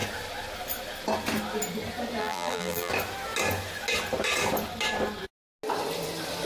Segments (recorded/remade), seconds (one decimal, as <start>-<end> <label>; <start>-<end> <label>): 0.0-2.2 recorded; 2.2-2.9 remade; 2.9-6.5 recorded